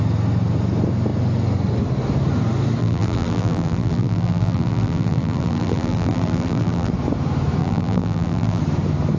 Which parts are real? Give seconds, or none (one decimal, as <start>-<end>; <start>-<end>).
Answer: 0.0-2.8; 6.9-7.6; 8.6-9.2